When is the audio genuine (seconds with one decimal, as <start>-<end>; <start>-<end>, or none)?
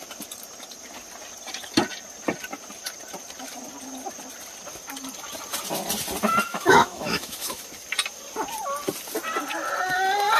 0.0-6.5; 7.6-10.4